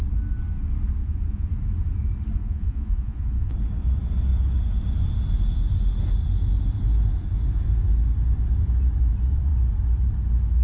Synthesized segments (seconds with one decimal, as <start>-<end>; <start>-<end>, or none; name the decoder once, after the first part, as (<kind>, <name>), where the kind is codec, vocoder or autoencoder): 1.0-1.5 (vocoder, Vocos); 2.4-3.5